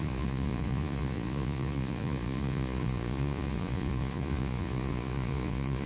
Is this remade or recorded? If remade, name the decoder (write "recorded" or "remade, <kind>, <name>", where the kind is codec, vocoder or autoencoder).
remade, vocoder, Vocos